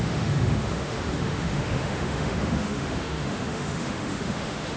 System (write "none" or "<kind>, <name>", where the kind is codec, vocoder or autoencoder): autoencoder, DAC-VAE